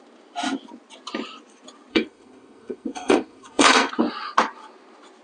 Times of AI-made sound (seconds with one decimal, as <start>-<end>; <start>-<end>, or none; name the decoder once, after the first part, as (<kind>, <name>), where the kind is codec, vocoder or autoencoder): 1.9-3.9 (codec, SNAC)